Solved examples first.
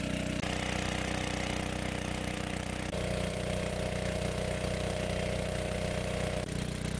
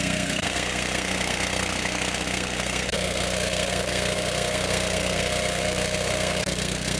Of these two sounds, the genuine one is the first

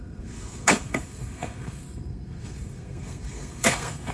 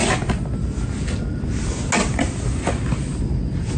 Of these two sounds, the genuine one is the second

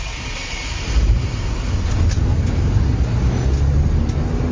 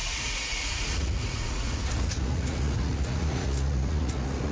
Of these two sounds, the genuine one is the first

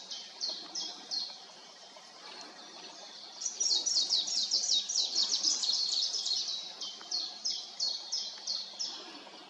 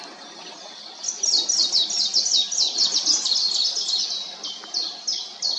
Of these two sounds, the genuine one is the second